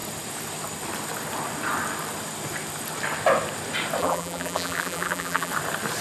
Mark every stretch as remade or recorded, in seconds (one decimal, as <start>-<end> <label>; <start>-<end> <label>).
0.0-4.0 recorded; 4.0-5.5 remade; 5.5-6.0 recorded